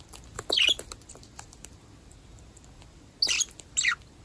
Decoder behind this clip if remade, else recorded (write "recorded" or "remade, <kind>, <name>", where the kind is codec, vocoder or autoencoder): recorded